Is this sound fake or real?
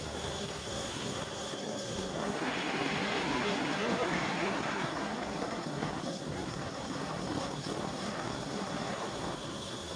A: fake